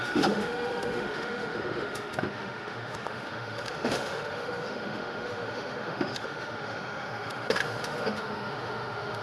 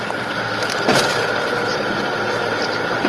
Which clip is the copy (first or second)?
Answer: first